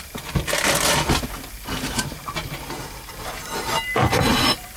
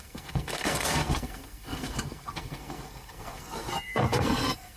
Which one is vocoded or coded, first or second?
second